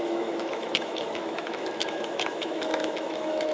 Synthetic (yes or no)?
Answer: yes